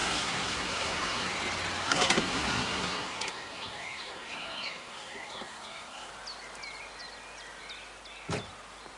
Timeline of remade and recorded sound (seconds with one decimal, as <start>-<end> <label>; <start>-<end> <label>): 0.0-1.3 remade; 1.3-1.8 recorded; 1.8-6.1 remade; 6.1-9.0 recorded

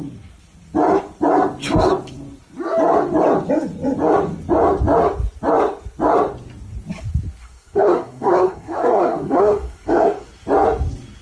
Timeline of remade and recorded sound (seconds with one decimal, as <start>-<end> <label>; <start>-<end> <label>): 0.0-7.4 recorded; 7.4-10.3 remade; 10.3-11.2 recorded